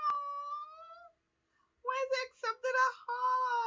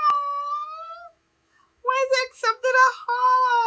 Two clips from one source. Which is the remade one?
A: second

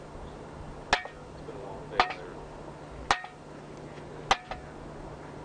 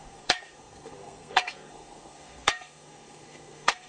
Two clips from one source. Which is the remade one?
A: second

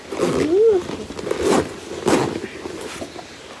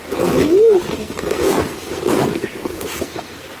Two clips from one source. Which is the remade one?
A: second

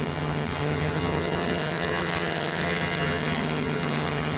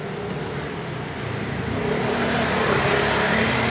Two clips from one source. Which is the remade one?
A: first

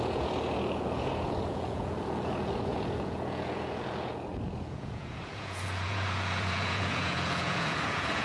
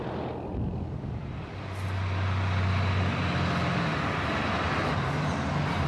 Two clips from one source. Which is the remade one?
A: first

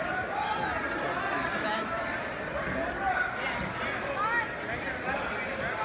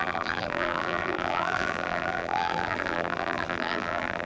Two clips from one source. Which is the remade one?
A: second